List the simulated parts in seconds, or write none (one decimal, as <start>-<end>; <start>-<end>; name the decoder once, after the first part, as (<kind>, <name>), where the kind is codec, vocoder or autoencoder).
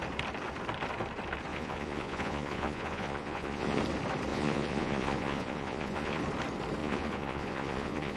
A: 1.5-3.8 (vocoder, Vocos); 4.3-6.2; 6.8-8.2